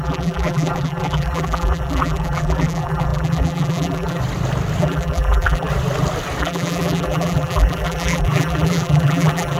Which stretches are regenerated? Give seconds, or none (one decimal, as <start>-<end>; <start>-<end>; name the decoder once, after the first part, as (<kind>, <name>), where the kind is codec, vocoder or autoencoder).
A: 0.0-4.2 (vocoder, BigVGAN v2); 4.8-5.7; 6.4-9.6